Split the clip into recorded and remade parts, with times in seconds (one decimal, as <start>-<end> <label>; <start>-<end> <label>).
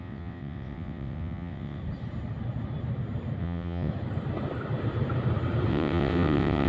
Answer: 0.0-1.8 remade; 1.8-3.4 recorded; 3.4-3.9 remade; 3.9-5.7 recorded; 5.7-6.7 remade